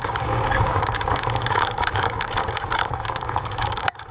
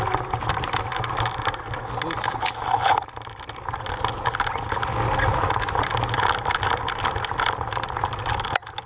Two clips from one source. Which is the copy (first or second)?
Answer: first